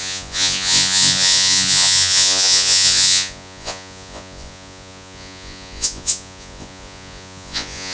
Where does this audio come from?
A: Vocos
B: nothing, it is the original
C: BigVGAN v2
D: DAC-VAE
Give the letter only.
A